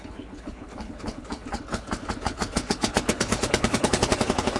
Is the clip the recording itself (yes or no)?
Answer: no